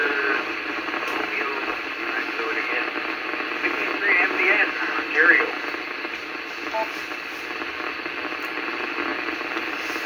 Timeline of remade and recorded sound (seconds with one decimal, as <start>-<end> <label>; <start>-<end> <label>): 0.0-1.9 remade; 1.9-10.1 recorded